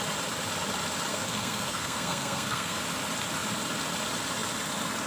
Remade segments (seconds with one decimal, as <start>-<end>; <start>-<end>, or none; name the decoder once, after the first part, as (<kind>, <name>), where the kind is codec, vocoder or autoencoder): 1.1-2.8 (codec, SNAC)